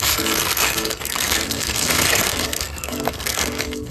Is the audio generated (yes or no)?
yes